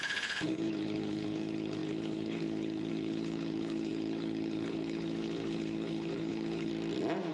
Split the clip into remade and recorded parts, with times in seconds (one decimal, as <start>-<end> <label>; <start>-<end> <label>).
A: 0.0-6.7 remade; 6.7-7.3 recorded